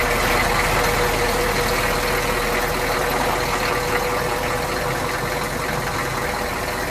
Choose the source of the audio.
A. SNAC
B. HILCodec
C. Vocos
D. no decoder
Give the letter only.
D